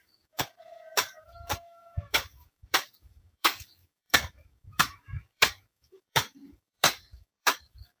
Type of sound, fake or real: fake